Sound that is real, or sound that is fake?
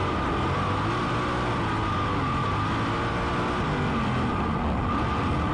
real